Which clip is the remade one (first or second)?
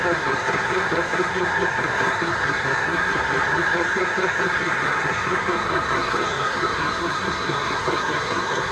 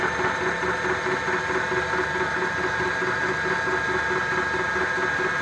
first